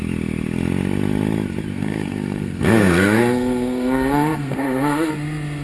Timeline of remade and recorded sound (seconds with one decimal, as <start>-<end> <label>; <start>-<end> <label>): 0.0-1.7 recorded; 1.7-5.1 remade; 5.1-5.6 recorded